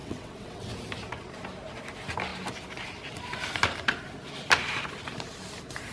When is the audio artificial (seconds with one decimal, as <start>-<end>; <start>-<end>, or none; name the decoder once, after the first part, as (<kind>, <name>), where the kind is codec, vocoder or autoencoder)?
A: 0.0-0.7 (vocoder, WaveNeXt)